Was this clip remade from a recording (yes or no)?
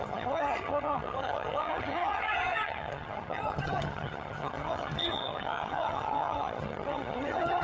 yes